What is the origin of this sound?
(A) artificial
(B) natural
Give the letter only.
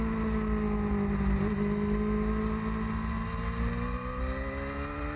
B